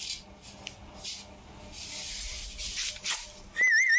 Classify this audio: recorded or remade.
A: recorded